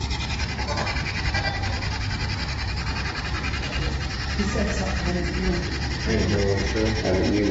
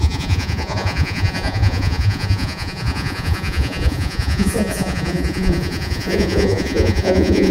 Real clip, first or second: first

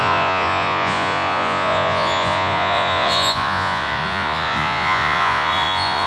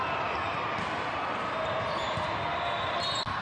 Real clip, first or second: second